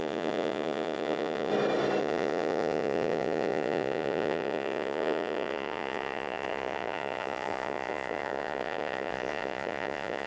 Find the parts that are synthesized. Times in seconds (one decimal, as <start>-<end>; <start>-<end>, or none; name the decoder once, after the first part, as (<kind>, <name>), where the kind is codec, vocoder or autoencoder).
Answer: 0.0-1.5 (vocoder, Vocos); 2.0-10.3